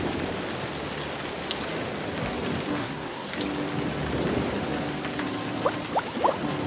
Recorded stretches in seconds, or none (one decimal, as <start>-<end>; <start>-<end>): 0.0-2.8; 3.3-6.7